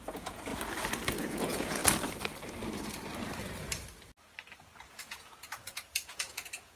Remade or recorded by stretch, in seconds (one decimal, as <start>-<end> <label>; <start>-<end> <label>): 0.0-0.5 remade; 0.5-1.2 recorded; 1.2-1.8 remade; 1.8-4.9 recorded; 4.9-6.8 remade